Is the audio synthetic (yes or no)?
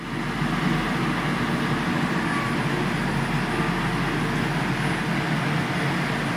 no